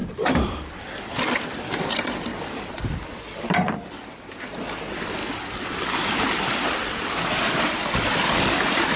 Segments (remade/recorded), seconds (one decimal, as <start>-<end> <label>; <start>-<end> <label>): 0.0-1.4 remade; 1.4-9.0 recorded